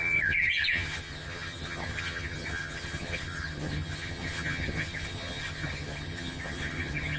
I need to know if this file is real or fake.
fake